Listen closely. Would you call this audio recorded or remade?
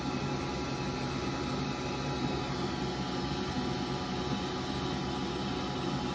recorded